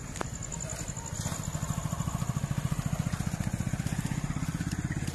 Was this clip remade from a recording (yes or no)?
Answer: no